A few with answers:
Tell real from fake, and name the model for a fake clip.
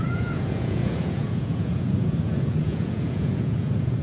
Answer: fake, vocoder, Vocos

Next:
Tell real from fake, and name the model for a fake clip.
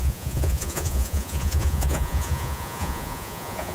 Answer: fake, vocoder, Vocos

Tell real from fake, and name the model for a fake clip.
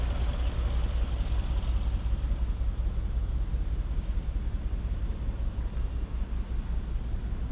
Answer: real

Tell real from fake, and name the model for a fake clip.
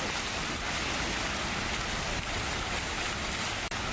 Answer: real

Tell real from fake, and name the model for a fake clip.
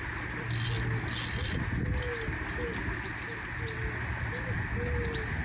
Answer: real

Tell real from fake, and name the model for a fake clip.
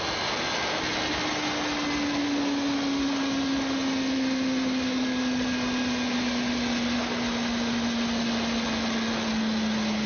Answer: real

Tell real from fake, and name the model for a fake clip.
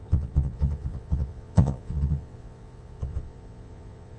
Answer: fake, vocoder, Vocos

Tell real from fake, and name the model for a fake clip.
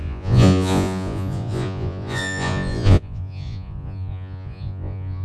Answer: fake, vocoder, Vocos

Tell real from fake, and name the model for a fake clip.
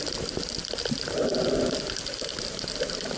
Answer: real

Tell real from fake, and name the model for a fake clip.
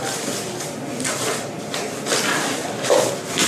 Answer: real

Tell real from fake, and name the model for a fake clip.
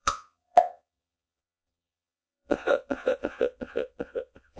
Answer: fake, vocoder, Vocos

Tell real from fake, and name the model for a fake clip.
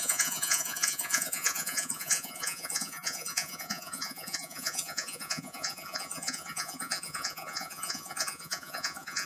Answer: fake, vocoder, Vocos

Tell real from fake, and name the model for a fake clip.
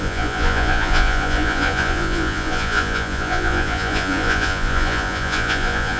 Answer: fake, vocoder, Vocos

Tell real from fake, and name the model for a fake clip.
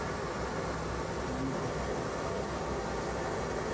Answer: real